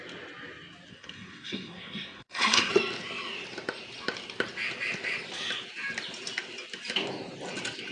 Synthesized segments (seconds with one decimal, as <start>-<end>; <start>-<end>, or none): 0.9-2.7